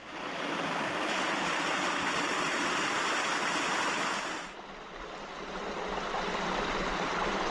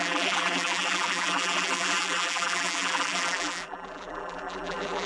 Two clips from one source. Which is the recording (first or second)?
first